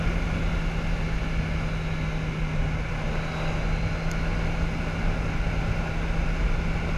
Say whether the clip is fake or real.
real